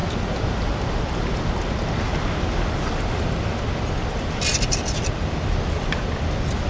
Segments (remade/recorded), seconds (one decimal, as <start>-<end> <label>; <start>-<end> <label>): 0.0-6.7 recorded